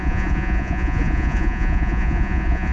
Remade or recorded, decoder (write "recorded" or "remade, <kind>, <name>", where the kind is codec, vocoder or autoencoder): remade, vocoder, Vocos